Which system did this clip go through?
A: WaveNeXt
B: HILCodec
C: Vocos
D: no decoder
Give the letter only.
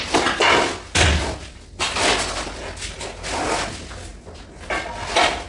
D